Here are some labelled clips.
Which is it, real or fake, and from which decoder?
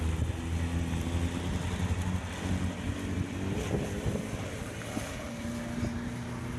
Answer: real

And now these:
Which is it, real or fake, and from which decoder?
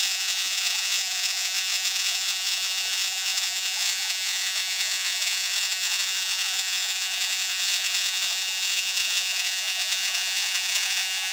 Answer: fake, vocoder, Vocos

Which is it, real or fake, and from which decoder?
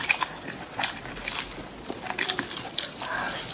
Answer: real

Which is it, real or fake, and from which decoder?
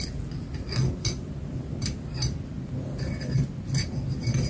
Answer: real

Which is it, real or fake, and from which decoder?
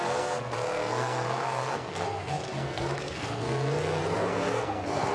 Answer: fake, codec, SNAC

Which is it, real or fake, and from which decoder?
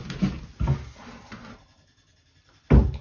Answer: real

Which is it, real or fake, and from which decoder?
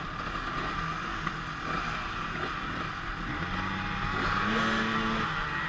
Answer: real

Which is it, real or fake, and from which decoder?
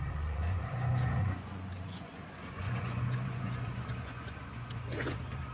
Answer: fake, vocoder, Vocos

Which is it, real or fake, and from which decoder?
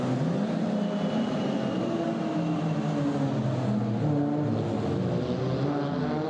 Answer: real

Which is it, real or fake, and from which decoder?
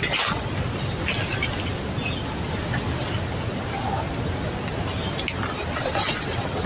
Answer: real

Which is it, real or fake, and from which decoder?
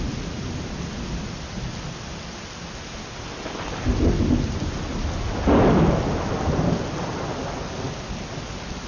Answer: real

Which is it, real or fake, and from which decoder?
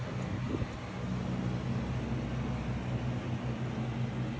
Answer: real